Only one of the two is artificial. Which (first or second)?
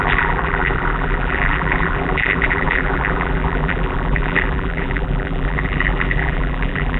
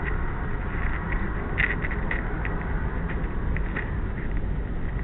first